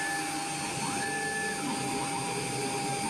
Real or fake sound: real